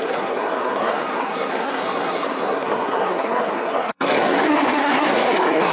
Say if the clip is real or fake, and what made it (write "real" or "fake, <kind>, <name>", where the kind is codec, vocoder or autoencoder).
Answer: fake, codec, SNAC